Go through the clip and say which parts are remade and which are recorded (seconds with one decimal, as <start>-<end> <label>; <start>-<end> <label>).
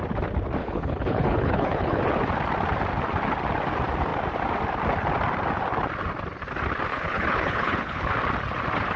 0.0-0.6 recorded; 0.6-2.0 remade; 2.0-6.9 recorded; 6.9-8.1 remade; 8.1-9.0 recorded